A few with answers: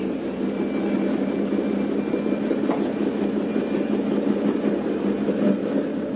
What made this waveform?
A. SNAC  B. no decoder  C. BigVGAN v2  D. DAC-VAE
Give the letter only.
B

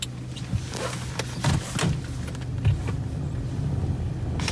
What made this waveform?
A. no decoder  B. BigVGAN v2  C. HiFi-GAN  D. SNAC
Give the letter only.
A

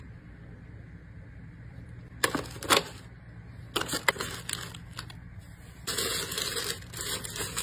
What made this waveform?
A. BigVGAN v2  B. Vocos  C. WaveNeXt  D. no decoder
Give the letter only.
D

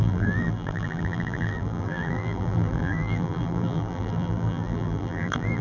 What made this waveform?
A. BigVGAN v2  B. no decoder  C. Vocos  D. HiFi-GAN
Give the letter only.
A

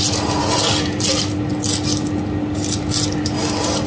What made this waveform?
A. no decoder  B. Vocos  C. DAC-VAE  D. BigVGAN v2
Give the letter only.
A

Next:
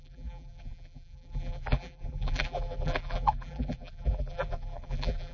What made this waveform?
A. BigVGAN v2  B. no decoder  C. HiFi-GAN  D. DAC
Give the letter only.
A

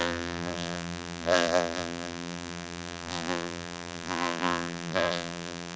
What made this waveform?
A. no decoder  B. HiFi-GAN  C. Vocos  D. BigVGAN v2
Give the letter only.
D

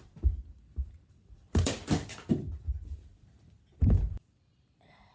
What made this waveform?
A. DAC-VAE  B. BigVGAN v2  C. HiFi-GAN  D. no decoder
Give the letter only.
B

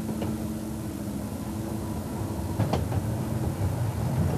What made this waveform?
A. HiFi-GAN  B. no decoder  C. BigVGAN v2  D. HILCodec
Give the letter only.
B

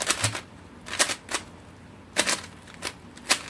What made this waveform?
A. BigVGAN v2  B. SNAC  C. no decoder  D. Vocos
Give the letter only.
C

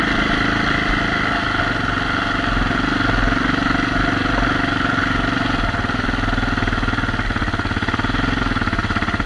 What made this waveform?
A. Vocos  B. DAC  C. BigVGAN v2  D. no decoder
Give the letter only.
D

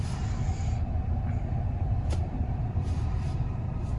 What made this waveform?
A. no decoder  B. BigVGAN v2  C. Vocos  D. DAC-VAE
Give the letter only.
B